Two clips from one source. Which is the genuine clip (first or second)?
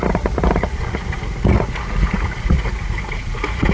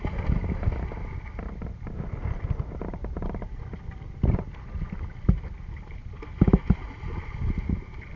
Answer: second